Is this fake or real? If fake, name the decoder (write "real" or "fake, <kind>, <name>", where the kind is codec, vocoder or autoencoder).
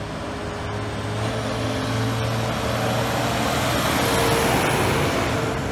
real